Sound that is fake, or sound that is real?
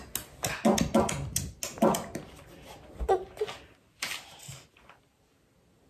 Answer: real